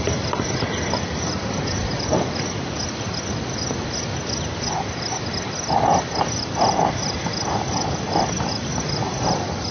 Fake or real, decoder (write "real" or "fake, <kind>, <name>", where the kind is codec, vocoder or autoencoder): fake, vocoder, BigVGAN v2